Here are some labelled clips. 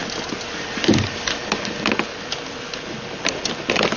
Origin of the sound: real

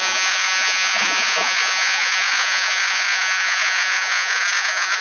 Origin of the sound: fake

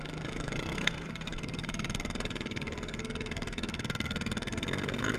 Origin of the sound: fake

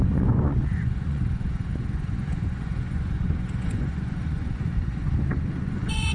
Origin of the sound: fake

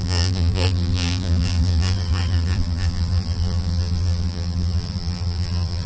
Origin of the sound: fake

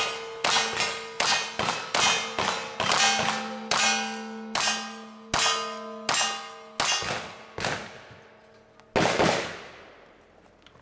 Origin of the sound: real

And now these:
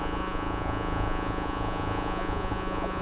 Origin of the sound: fake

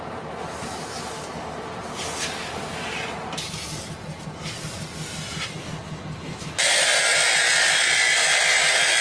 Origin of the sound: real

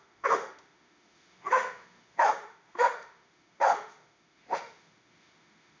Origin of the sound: fake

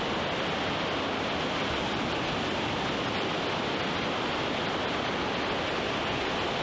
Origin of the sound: real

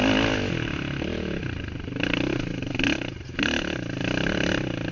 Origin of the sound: real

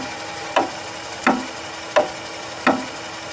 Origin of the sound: real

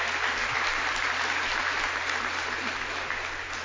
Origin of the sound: real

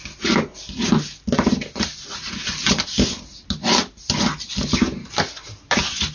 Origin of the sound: real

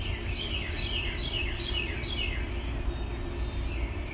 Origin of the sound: real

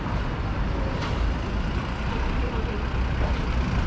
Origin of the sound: real